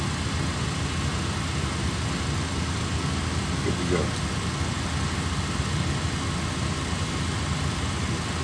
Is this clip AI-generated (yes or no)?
no